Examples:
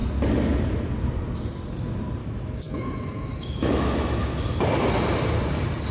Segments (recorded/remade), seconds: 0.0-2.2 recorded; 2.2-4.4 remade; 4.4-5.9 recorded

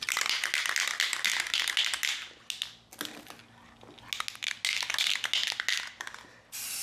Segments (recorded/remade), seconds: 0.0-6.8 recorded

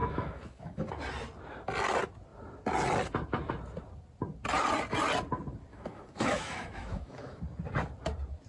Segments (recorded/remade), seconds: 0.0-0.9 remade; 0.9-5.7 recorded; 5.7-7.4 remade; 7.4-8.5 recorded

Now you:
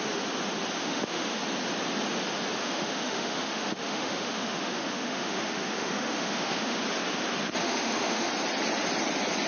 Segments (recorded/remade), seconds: 0.0-0.8 recorded; 0.8-1.4 remade; 1.4-2.6 recorded; 2.6-6.8 remade; 6.8-7.6 recorded; 7.6-8.3 remade; 8.3-9.5 recorded